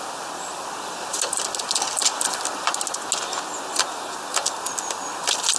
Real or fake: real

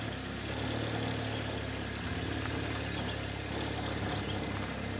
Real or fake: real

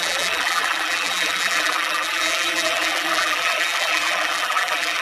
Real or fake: fake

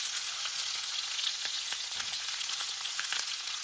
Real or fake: fake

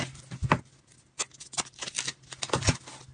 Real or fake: real